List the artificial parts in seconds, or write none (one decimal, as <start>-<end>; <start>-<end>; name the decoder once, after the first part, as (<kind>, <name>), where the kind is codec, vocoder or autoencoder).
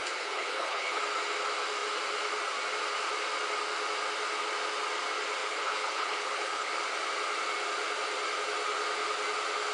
0.0-1.0 (codec, HILCodec); 5.4-6.7